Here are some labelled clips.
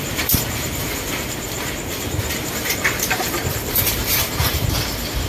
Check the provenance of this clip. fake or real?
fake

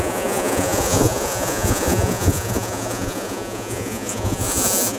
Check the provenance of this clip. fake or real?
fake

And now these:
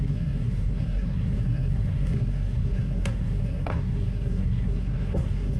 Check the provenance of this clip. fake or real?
fake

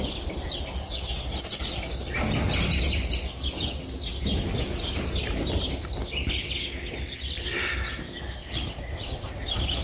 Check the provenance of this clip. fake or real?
real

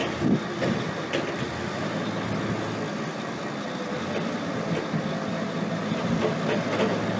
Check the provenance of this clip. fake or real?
real